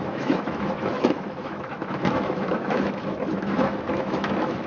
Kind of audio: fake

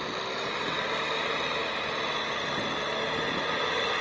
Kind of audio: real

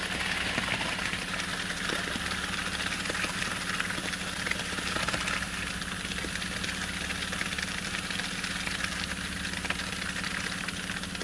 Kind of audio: real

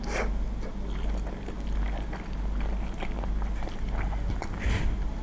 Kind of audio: real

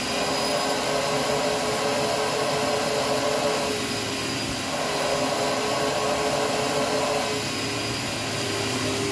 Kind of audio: real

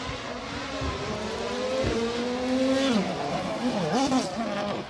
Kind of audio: real